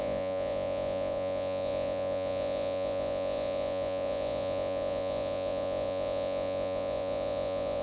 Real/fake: fake